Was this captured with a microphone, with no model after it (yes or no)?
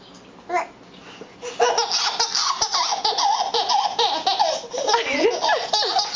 yes